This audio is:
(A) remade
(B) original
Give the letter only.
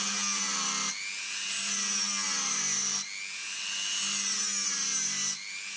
B